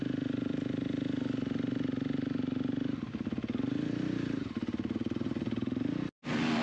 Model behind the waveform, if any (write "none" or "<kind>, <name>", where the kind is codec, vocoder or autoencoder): none